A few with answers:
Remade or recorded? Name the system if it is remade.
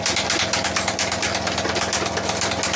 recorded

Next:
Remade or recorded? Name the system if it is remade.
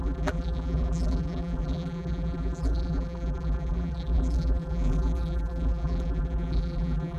remade, vocoder, BigVGAN v2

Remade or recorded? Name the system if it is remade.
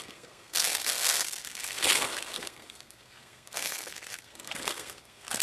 remade, codec, SNAC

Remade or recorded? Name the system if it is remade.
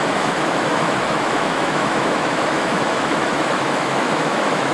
remade, autoencoder, DAC-VAE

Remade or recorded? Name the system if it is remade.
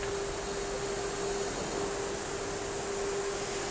recorded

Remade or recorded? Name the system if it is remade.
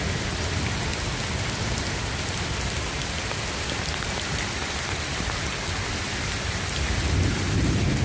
recorded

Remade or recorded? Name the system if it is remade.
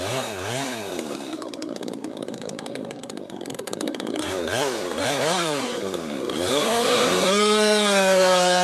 remade, codec, SNAC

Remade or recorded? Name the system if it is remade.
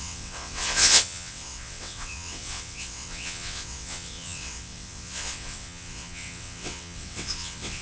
remade, vocoder, WaveNeXt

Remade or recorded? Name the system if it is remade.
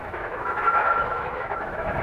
remade, autoencoder, DAC-VAE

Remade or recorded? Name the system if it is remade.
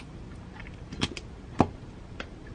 remade, vocoder, BigVGAN v2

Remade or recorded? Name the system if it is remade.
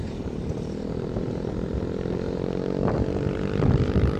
remade, vocoder, BigVGAN v2